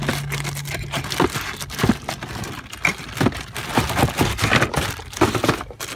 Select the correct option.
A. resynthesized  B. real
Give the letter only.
B